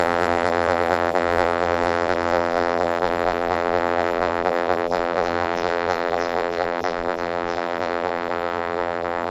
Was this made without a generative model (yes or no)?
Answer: no